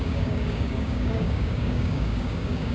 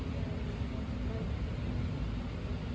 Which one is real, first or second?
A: second